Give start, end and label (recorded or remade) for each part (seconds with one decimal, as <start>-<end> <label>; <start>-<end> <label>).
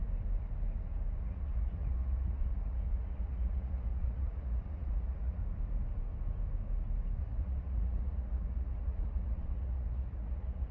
0.0-1.2 recorded; 1.2-5.4 remade; 5.4-7.2 recorded; 7.2-10.7 remade